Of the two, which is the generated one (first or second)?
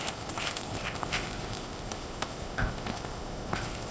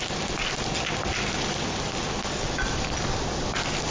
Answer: first